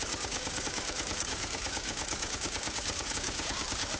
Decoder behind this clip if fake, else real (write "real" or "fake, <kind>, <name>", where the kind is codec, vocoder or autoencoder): fake, codec, DAC